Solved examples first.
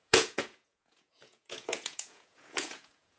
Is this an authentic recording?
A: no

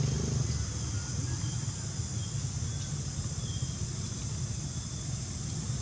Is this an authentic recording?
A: yes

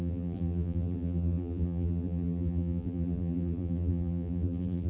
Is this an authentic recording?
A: no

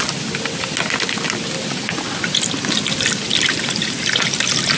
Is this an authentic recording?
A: yes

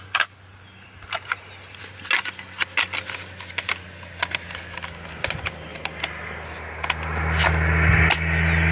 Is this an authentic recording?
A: yes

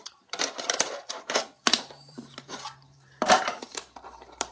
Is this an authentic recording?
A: no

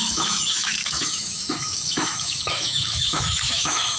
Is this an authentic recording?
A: no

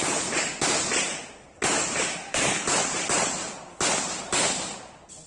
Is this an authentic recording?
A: yes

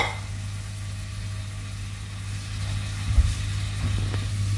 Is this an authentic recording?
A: yes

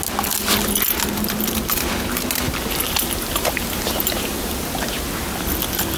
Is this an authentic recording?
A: yes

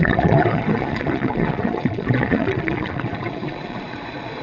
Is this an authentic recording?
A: no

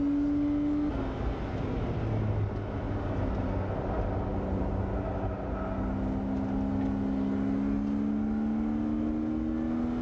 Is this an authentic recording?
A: yes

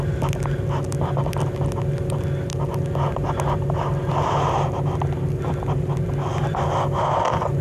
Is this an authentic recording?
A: yes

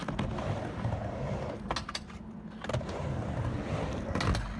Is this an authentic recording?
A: yes